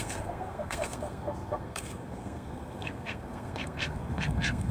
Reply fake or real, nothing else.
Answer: fake